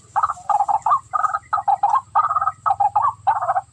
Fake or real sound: real